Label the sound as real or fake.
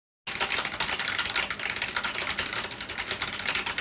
real